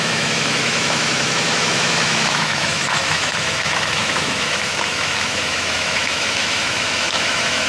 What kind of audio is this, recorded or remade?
remade